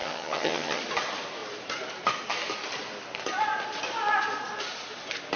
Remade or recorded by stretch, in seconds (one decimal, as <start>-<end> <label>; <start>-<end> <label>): 0.0-0.8 remade; 0.8-5.4 recorded